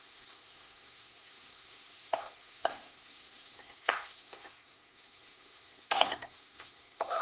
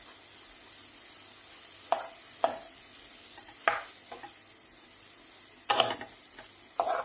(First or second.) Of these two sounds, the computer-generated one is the first